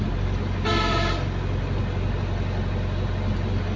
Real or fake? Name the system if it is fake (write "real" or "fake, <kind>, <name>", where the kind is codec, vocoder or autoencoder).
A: real